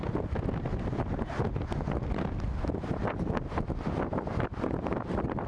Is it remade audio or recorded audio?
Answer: recorded